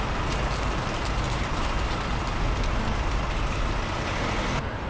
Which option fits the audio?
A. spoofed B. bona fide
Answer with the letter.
B